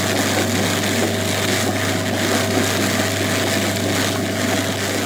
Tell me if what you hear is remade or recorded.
recorded